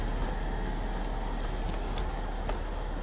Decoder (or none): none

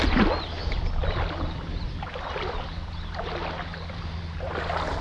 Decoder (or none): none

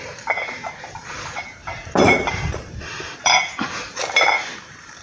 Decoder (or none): vocoder, BigVGAN v2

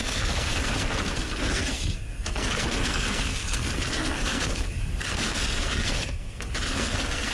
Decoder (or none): codec, SNAC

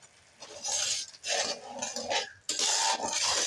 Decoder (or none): none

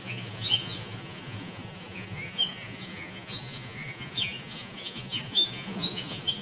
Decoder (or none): vocoder, Vocos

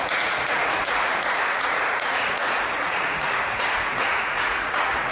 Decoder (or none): vocoder, Vocos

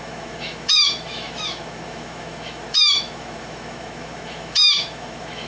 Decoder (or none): autoencoder, DAC-VAE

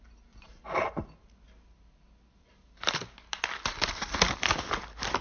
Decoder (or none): none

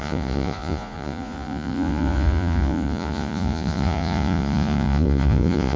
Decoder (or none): vocoder, Vocos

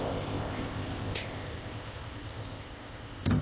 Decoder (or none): codec, ZipCodec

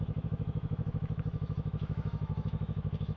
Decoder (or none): autoencoder, DAC-VAE